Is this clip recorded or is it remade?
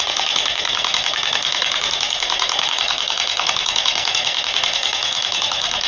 remade